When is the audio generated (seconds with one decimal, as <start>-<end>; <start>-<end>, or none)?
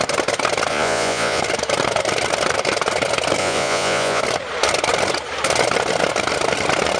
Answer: 0.7-1.4; 3.4-4.2